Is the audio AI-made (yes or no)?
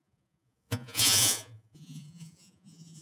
yes